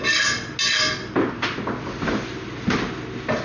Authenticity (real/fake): real